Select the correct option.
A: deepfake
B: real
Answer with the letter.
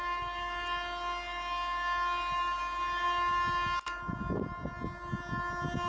B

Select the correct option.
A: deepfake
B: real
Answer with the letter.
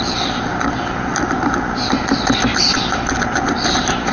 B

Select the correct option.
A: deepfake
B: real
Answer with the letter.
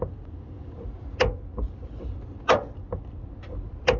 B